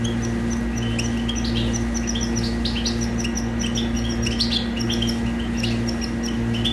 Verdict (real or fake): real